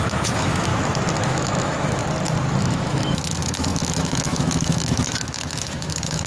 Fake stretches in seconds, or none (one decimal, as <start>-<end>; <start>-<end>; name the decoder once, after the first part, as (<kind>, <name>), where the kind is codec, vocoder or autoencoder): 0.0-0.7 (autoencoder, DAC-VAE); 1.2-2.0; 2.6-6.3